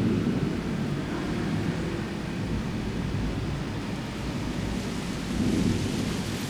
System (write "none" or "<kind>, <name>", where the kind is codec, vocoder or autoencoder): none